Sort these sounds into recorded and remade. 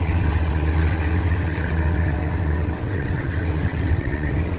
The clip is remade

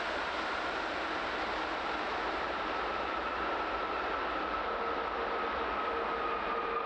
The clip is recorded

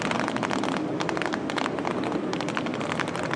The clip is recorded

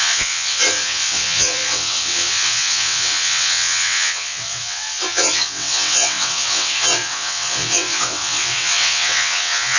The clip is remade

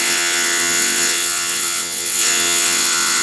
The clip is remade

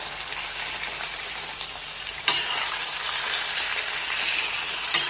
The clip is recorded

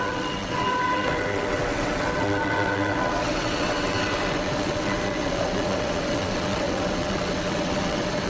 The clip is remade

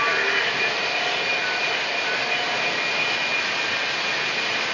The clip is recorded